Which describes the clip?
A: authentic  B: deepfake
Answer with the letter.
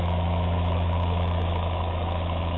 B